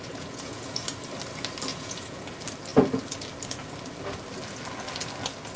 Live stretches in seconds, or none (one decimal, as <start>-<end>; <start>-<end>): 0.8-1.7; 2.3-5.6